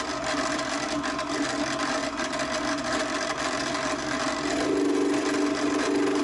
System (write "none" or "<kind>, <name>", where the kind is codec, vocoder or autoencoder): none